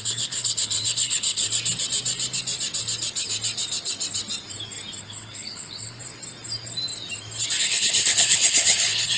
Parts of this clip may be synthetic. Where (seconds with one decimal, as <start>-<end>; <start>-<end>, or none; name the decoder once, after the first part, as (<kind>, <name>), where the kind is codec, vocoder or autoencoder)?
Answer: 0.0-1.4 (codec, HILCodec); 5.0-6.0; 7.6-9.2